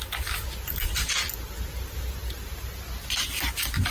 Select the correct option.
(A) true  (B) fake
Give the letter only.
A